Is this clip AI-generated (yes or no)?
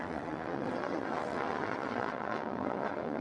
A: yes